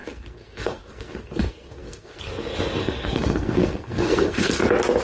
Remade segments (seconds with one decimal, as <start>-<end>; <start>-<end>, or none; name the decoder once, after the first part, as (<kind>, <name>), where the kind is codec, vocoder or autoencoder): 0.0-2.2 (codec, SNAC); 2.8-4.6